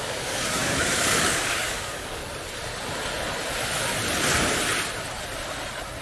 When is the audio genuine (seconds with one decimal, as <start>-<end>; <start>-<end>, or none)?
2.2-6.0